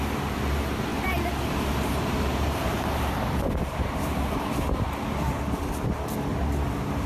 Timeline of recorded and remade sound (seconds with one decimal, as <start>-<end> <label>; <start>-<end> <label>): 0.0-0.9 recorded; 0.9-4.4 remade; 4.4-7.1 recorded